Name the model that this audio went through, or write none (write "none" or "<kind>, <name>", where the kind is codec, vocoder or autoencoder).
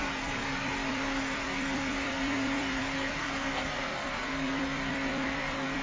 vocoder, BigVGAN v2